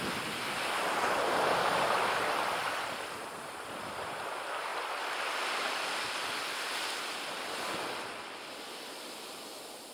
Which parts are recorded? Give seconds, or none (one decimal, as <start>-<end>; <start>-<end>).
none